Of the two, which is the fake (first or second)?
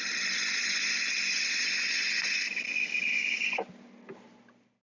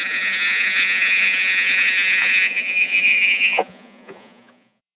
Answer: second